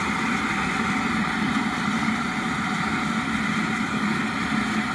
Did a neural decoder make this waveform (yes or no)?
yes